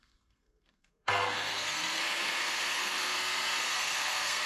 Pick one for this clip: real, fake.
fake